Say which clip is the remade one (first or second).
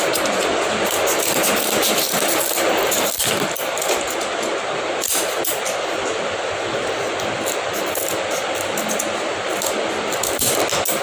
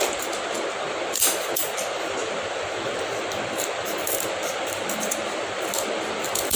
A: second